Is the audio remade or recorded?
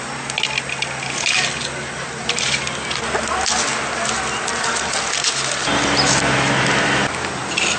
recorded